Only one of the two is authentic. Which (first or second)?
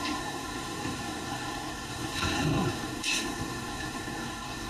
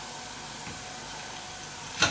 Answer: second